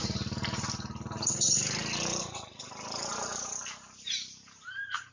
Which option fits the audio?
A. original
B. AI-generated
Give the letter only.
A